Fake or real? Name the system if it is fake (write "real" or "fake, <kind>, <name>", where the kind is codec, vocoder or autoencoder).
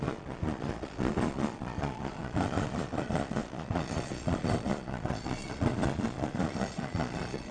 fake, vocoder, Vocos